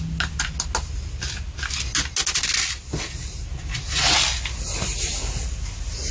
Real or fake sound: real